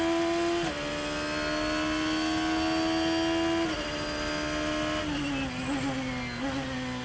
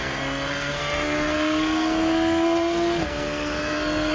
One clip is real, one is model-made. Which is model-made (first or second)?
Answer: second